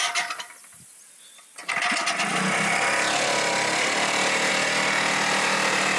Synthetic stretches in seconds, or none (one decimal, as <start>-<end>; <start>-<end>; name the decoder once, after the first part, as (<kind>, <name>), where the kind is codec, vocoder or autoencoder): none